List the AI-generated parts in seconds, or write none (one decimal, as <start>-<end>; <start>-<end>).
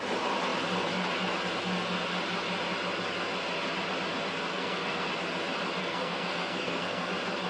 4.5-5.1; 5.8-7.1